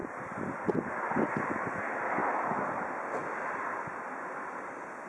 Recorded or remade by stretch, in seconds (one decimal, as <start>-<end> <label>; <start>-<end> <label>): 0.0-1.8 remade; 1.8-2.2 recorded; 2.2-2.8 remade; 2.8-3.2 recorded; 3.2-3.9 remade; 3.9-5.1 recorded